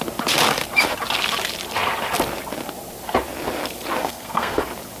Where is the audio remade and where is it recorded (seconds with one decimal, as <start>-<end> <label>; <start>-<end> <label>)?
0.0-4.0 recorded; 4.0-4.6 remade; 4.6-5.0 recorded